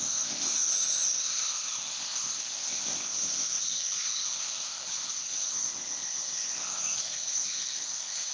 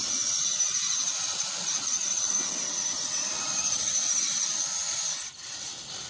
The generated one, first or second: first